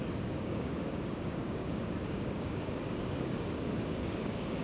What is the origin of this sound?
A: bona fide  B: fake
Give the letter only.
B